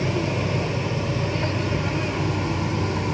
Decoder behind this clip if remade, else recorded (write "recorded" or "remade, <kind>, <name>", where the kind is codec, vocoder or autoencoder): recorded